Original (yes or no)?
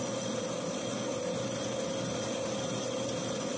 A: yes